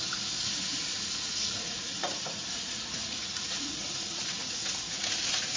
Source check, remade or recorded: remade